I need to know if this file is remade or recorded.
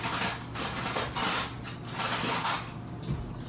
recorded